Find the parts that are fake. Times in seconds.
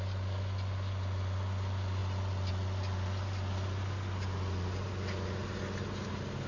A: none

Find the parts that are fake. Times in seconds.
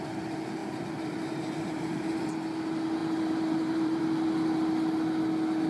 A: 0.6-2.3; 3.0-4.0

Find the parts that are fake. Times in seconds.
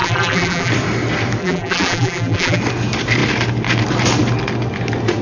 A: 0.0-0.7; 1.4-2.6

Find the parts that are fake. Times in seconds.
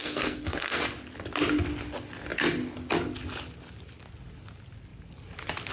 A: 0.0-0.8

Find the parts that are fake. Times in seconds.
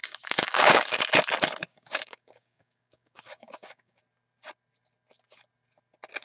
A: 0.0-1.0; 1.7-4.0